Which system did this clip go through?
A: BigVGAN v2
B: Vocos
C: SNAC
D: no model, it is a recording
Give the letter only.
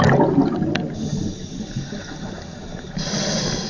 D